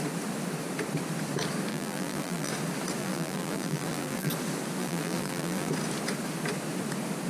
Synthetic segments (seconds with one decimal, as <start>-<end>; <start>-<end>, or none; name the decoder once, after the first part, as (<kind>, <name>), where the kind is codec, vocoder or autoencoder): 1.7-2.5 (vocoder, BigVGAN v2); 3.0-4.3; 4.8-5.7